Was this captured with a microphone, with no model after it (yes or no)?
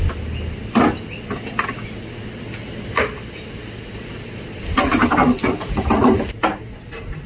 yes